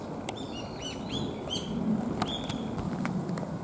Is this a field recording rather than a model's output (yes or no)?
yes